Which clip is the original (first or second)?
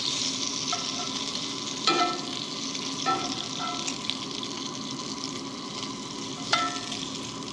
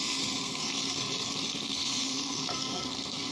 first